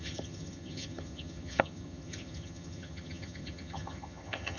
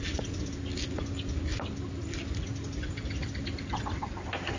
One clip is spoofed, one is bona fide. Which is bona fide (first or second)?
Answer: second